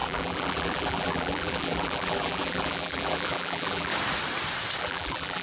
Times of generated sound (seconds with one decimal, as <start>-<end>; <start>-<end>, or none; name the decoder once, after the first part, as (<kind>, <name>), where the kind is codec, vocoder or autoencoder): 0.0-3.9 (vocoder, BigVGAN v2); 4.8-5.4

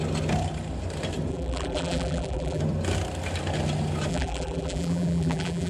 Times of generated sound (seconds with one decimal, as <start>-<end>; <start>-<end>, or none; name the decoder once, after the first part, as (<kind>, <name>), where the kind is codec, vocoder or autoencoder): 1.3-2.6 (vocoder, BigVGAN v2); 4.1-5.7

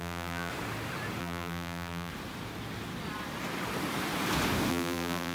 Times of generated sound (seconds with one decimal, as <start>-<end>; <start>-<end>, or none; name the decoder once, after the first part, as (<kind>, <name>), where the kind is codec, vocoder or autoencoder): 0.0-0.5 (vocoder, BigVGAN v2); 1.2-2.1; 4.7-5.3

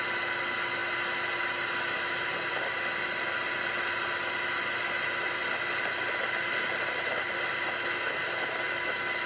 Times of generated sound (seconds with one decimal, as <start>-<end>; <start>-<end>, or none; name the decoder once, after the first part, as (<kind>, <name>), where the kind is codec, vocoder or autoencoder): none

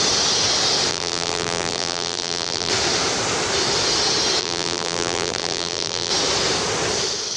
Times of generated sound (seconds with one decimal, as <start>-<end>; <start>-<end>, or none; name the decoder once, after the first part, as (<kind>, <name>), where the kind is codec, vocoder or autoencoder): 0.9-2.7 (vocoder, BigVGAN v2); 4.4-6.1

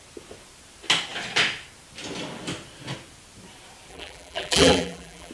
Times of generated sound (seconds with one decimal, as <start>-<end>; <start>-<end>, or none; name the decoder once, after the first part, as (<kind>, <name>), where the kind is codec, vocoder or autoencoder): 3.9-5.3 (vocoder, BigVGAN v2)

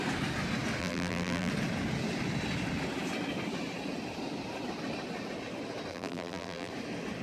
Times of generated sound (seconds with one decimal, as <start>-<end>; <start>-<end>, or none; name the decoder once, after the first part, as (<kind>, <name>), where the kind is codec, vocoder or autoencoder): 0.8-1.5 (vocoder, BigVGAN v2); 5.9-6.7